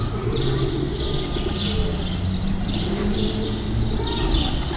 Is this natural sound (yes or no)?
yes